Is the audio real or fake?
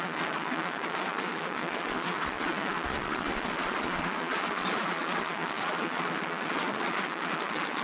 fake